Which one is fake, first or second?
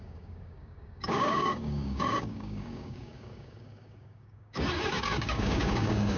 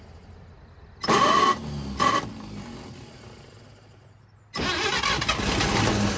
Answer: first